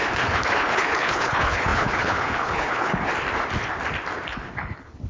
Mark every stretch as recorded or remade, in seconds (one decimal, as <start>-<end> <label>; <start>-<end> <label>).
0.0-3.1 remade; 3.1-4.3 recorded; 4.3-5.1 remade